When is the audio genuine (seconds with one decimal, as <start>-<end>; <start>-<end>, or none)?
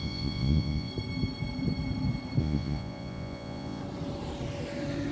0.9-2.4; 3.8-5.1